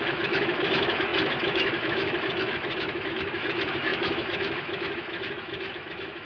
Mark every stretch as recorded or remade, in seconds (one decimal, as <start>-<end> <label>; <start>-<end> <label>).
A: 0.0-6.2 remade